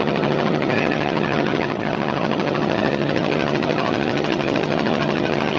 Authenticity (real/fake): fake